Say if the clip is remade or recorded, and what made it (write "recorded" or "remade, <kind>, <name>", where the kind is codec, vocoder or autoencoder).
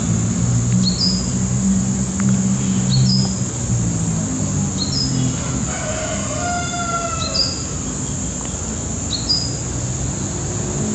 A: recorded